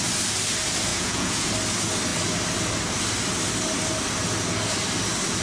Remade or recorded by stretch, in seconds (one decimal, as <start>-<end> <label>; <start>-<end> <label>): 0.0-0.9 recorded; 0.9-1.5 remade; 1.5-5.4 recorded